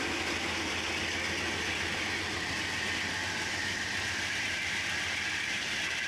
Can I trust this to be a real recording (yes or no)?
yes